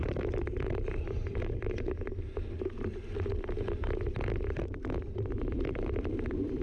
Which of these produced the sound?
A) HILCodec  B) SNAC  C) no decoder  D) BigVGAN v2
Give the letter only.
D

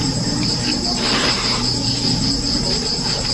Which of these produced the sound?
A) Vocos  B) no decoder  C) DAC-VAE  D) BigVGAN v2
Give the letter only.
D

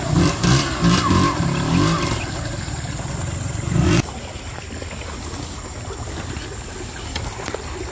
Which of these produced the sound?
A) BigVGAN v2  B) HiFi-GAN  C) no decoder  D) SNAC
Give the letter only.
C